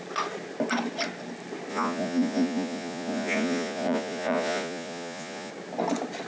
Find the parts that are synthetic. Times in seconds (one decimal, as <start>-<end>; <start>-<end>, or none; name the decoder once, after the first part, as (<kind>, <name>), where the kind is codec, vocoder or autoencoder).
1.7-5.5 (vocoder, Vocos)